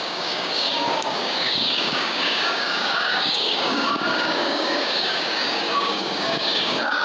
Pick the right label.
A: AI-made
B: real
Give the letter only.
A